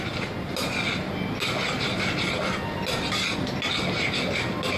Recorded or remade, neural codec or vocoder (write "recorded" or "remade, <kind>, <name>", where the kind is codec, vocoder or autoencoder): recorded